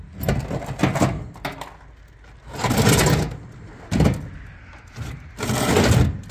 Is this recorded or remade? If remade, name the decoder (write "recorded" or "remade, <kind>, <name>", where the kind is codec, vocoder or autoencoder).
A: recorded